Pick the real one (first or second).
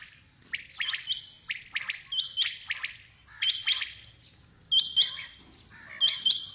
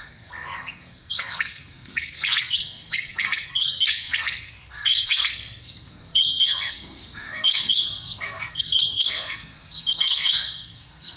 first